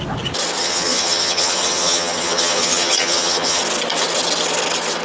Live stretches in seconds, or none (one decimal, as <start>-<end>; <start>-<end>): 0.0-0.6; 3.6-5.0